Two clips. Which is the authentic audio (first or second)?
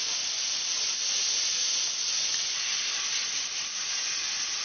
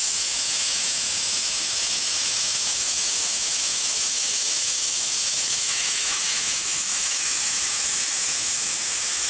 first